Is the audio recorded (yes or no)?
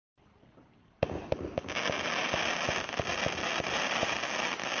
yes